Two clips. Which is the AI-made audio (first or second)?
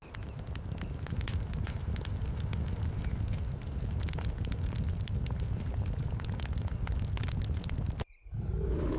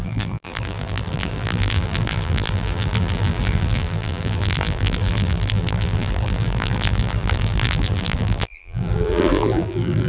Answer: second